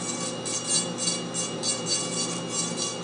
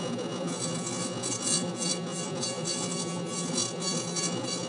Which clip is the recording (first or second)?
first